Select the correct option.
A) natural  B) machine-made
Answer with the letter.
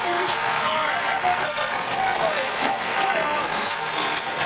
B